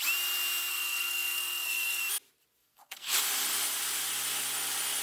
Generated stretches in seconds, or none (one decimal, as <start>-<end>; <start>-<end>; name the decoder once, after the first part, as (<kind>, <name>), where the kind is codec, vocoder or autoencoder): 0.7-2.0 (codec, SNAC); 2.6-3.2